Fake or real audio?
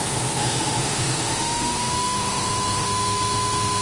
fake